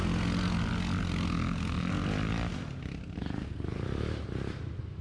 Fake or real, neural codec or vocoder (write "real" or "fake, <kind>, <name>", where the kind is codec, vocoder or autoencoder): real